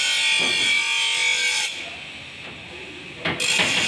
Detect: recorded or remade recorded